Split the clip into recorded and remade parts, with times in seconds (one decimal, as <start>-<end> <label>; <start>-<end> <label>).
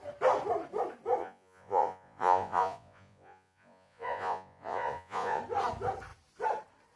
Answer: 0.0-1.2 recorded; 1.2-5.4 remade; 5.4-7.0 recorded